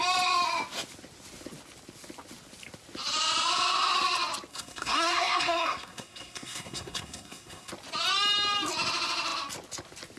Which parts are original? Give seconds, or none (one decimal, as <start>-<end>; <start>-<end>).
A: 0.0-4.5; 7.7-10.2